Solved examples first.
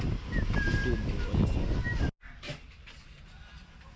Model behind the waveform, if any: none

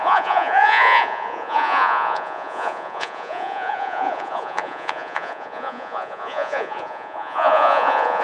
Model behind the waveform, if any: vocoder, Vocos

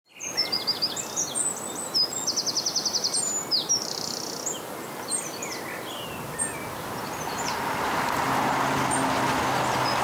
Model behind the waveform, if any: none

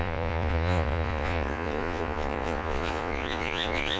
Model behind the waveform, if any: vocoder, Vocos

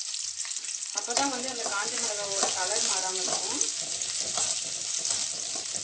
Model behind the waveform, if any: none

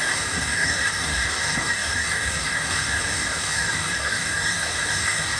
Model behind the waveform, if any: codec, DAC